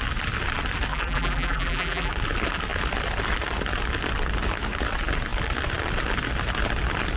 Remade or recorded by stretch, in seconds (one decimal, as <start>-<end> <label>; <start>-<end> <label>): 0.0-0.9 recorded; 0.9-2.1 remade; 2.1-7.2 recorded